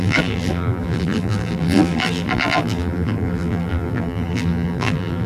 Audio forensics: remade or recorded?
remade